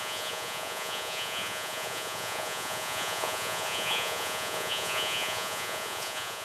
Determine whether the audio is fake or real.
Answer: fake